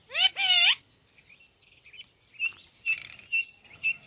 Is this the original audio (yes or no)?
no